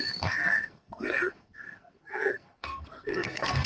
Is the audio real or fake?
fake